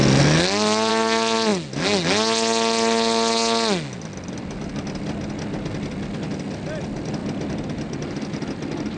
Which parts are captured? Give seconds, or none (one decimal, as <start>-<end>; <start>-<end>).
0.0-9.0